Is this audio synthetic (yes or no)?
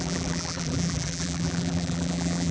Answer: yes